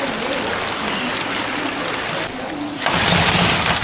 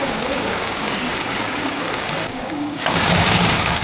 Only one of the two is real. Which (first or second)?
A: first